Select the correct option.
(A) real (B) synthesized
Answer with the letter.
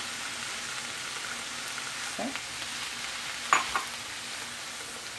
A